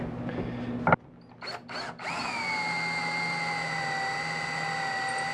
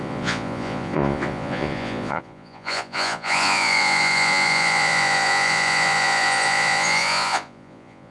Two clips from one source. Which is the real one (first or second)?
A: first